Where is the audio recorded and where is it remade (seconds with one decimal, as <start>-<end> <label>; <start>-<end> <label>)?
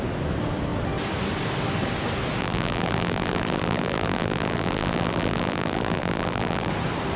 0.0-2.4 recorded; 2.4-6.7 remade; 6.7-7.2 recorded